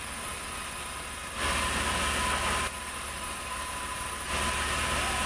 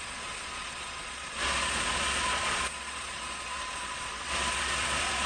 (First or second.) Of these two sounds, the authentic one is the first